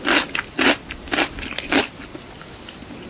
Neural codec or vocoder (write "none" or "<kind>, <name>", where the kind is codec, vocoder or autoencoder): none